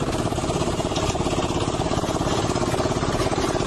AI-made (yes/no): no